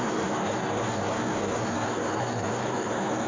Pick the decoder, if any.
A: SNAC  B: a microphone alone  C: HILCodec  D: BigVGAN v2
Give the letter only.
A